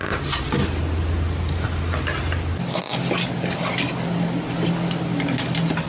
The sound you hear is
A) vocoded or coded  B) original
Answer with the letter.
B